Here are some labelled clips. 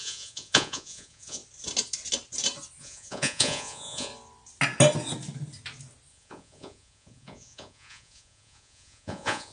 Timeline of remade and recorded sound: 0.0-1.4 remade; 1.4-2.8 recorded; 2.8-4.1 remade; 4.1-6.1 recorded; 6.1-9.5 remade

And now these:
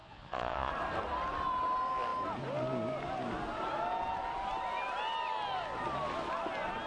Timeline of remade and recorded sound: 0.0-0.7 remade; 0.7-6.9 recorded

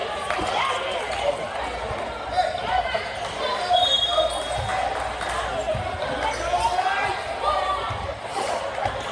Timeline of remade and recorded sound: 0.0-9.1 recorded